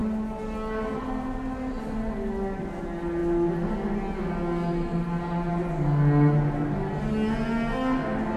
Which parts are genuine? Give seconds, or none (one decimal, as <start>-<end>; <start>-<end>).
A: 0.0-8.4